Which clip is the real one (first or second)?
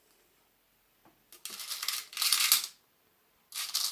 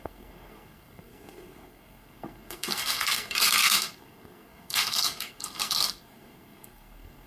first